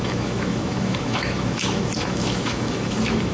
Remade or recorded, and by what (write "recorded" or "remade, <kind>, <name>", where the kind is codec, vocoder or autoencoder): remade, autoencoder, DAC-VAE